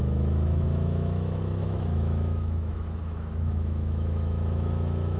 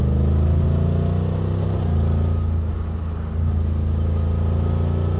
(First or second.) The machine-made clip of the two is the first